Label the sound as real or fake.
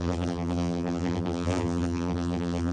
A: fake